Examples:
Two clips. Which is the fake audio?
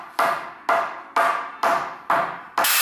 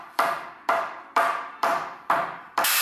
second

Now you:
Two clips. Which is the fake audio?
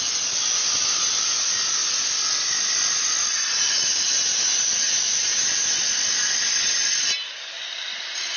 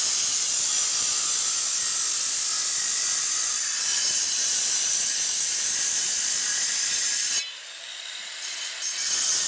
second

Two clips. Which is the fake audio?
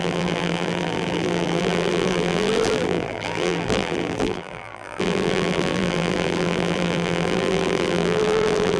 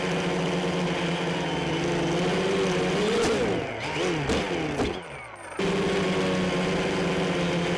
first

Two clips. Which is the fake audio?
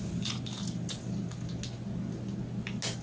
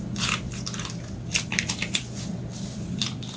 second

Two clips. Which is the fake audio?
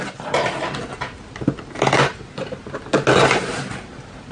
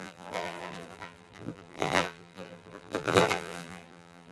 second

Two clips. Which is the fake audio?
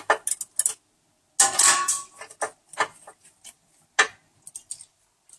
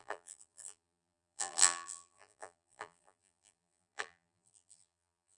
second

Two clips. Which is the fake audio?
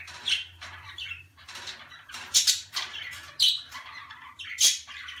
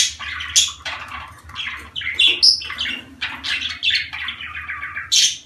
first